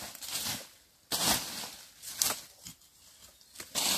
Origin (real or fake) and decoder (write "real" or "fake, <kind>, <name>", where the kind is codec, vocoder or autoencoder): real